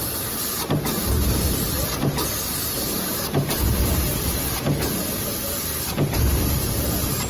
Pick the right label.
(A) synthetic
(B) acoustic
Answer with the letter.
A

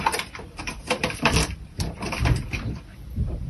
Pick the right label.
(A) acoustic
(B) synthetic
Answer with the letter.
B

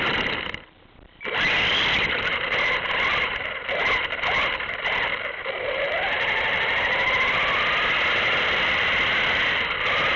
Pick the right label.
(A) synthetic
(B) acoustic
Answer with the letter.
A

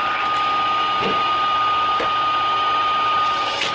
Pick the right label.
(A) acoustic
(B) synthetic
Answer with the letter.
A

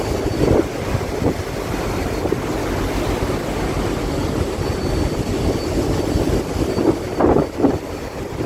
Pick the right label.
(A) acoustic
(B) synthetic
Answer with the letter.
A